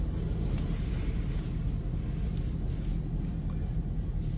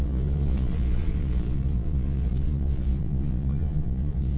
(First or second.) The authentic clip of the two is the first